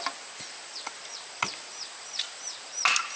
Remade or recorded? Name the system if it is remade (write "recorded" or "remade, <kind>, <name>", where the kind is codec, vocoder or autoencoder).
recorded